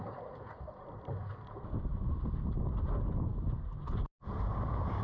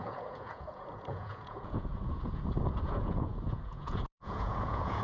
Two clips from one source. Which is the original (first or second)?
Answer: first